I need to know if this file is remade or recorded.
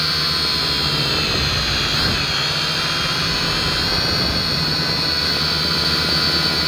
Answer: recorded